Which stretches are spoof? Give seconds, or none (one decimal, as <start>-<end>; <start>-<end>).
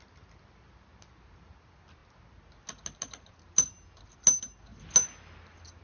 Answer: none